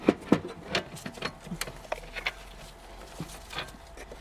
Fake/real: real